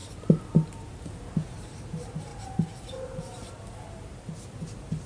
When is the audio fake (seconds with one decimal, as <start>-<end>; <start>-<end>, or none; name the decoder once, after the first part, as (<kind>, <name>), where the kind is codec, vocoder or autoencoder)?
0.8-4.1 (vocoder, BigVGAN v2); 4.6-5.1